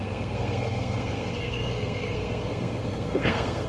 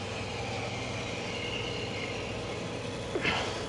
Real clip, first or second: second